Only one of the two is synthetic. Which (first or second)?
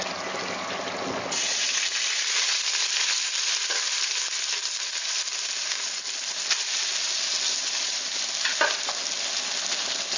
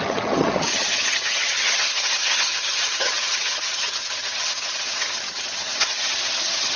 second